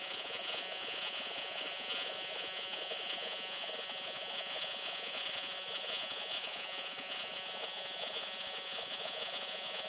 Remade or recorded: remade